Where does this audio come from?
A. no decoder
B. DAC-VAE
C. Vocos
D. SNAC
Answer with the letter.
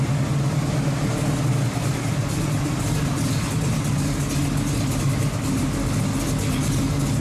A